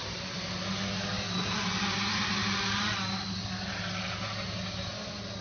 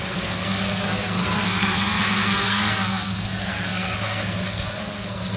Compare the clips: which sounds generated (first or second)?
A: second